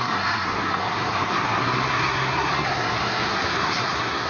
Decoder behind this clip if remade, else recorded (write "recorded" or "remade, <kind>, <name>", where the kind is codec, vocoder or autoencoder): remade, codec, SNAC